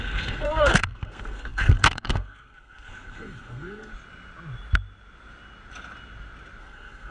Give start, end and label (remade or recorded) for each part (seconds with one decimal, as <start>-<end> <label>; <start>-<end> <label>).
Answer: 0.0-3.9 remade; 3.9-6.6 recorded; 6.6-7.1 remade